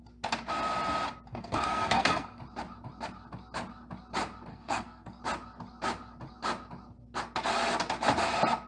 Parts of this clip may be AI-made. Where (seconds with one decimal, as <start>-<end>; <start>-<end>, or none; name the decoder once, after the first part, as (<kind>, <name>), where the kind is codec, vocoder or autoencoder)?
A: 1.3-2.4 (codec, SNAC); 4.5-5.2